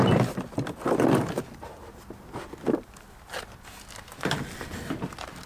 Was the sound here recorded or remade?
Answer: recorded